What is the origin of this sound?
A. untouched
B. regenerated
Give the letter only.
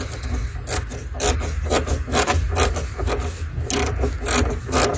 A